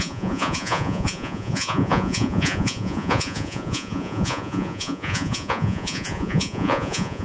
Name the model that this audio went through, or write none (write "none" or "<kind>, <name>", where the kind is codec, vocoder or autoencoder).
vocoder, Vocos